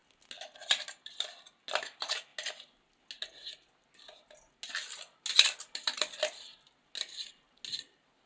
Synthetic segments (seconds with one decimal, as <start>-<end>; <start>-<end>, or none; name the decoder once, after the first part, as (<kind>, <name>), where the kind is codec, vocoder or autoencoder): none